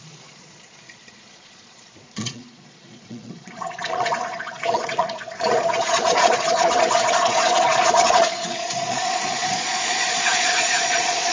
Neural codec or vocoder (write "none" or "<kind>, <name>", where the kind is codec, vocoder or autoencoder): vocoder, Vocos